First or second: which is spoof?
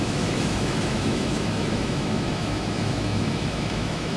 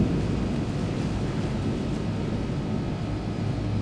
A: first